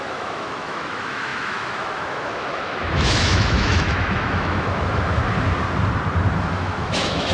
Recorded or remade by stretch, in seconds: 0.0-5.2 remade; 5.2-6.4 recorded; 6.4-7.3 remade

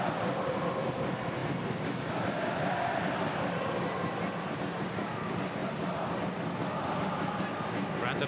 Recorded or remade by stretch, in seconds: 0.0-8.3 recorded

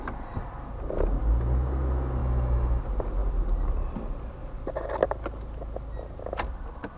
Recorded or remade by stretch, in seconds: 0.0-2.2 recorded; 2.2-2.8 remade; 2.8-7.0 recorded

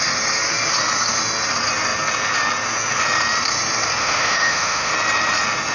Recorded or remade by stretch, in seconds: 0.0-4.0 recorded; 4.0-4.9 remade; 4.9-5.7 recorded

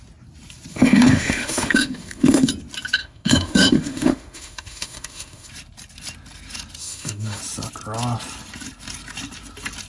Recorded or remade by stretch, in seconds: 0.0-0.7 recorded; 0.7-2.5 remade; 2.5-3.0 recorded; 3.0-5.5 remade; 5.5-6.8 recorded; 6.8-7.4 remade; 7.4-9.9 recorded

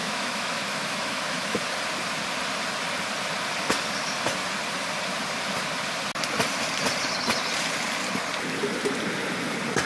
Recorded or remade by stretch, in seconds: 0.0-1.6 remade; 1.6-9.9 recorded